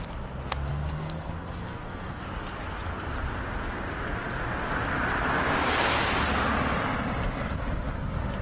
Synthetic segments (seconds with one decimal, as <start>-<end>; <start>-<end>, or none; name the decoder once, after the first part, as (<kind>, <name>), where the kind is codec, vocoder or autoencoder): 0.7-2.2 (codec, SNAC)